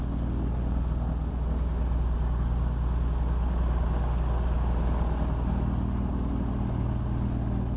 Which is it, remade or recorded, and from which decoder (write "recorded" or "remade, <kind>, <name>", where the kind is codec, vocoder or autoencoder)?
recorded